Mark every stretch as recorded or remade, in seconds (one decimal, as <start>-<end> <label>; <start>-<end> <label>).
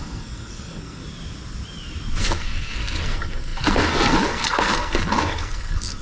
0.0-1.0 remade; 1.0-2.2 recorded; 2.2-6.0 remade